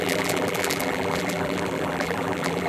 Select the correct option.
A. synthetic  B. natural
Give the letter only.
A